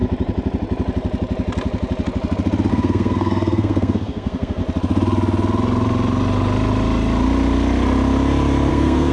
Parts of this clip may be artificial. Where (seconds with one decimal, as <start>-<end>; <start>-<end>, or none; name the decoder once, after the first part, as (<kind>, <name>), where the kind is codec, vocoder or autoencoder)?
2.7-4.6 (codec, SNAC); 8.7-9.1